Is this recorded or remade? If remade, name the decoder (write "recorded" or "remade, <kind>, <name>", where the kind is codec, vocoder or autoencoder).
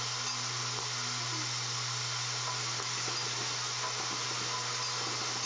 recorded